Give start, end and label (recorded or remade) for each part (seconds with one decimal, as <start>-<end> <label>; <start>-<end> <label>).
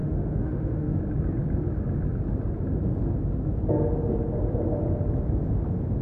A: 0.0-1.0 remade; 1.0-6.0 recorded